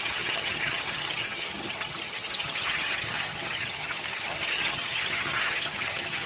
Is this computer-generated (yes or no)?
yes